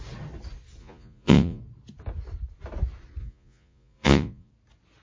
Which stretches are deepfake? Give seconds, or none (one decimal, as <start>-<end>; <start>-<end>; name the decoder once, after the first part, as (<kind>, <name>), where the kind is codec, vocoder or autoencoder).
0.8-1.6 (vocoder, Vocos); 3.2-4.5